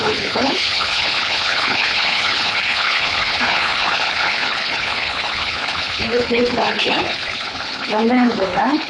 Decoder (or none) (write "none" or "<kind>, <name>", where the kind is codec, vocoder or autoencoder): codec, HILCodec